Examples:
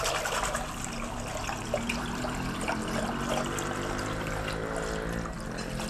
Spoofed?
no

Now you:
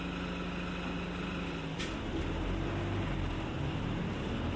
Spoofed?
no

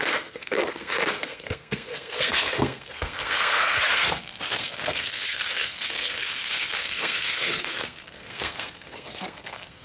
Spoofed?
yes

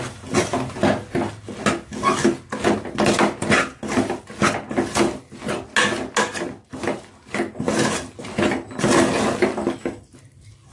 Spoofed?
no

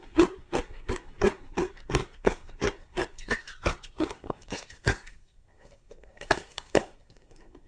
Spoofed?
yes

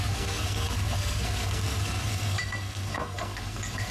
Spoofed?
yes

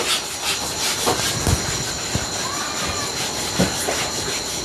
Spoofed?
no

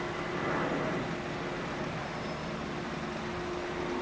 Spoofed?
no